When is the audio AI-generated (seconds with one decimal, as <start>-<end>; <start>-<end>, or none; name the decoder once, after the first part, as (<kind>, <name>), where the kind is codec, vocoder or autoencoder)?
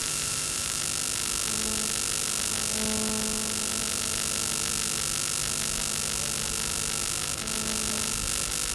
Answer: 0.0-0.8 (vocoder, BigVGAN v2)